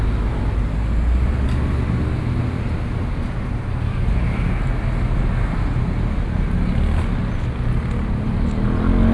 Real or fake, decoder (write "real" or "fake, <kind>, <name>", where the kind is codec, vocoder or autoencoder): real